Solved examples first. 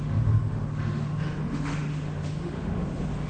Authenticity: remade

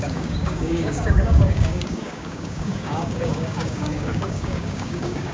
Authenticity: remade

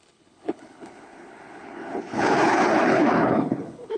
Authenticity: remade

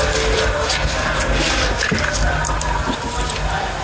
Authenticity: recorded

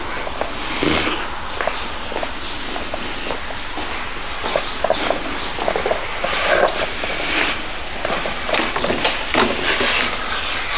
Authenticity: recorded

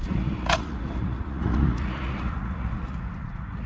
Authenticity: remade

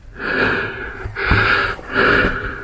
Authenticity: recorded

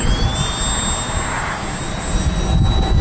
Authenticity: recorded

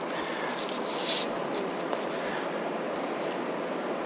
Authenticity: recorded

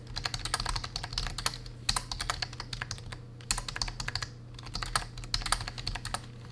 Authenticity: recorded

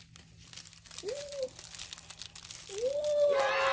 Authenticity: recorded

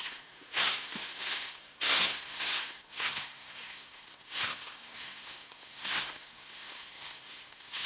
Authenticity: remade